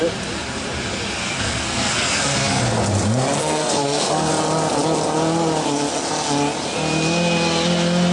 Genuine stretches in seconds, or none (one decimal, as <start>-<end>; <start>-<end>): 0.0-1.2; 2.6-3.4; 4.3-8.1